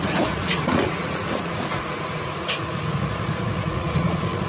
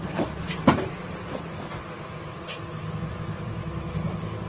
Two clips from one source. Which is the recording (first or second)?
second